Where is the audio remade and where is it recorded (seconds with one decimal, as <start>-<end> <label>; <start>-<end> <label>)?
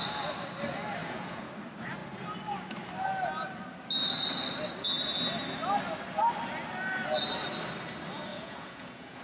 0.0-1.0 recorded; 1.0-1.5 remade; 1.5-8.3 recorded; 8.3-9.2 remade